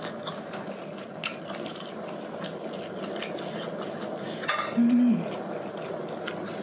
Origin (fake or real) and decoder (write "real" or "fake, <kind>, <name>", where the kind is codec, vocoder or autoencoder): real